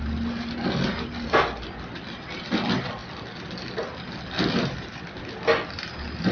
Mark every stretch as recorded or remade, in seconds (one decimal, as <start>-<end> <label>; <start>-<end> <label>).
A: 0.0-6.3 recorded

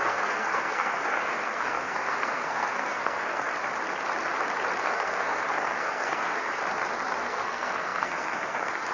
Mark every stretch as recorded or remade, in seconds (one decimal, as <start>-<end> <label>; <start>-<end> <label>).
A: 0.0-3.5 remade; 3.5-4.8 recorded; 4.8-6.6 remade; 6.6-7.2 recorded; 7.2-8.9 remade

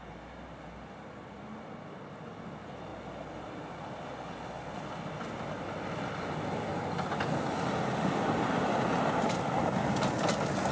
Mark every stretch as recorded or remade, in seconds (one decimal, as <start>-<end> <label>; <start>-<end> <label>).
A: 0.0-2.9 recorded; 2.9-3.7 remade; 3.7-10.7 recorded

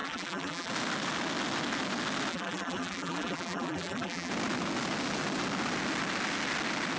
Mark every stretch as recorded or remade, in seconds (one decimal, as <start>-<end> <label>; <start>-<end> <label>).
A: 0.0-0.7 remade; 0.7-2.3 recorded; 2.3-4.3 remade; 4.3-7.0 recorded

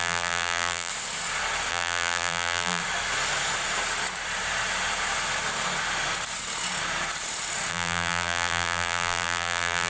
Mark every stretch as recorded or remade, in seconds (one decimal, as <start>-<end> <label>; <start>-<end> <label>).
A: 0.0-0.9 remade; 0.9-1.7 recorded; 1.7-2.8 remade; 2.8-7.7 recorded; 7.7-9.9 remade

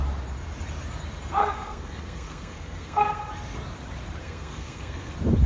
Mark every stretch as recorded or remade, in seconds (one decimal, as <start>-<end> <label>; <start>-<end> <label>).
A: 0.0-1.4 recorded; 1.4-3.3 remade; 3.3-4.2 recorded; 4.2-5.1 remade; 5.1-5.5 recorded

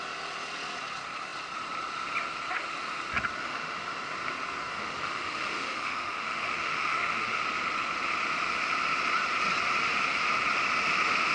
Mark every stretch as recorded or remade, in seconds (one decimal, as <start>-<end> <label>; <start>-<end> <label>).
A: 0.0-3.4 recorded; 3.4-4.0 remade; 4.0-4.7 recorded; 4.7-7.4 remade; 7.4-11.3 recorded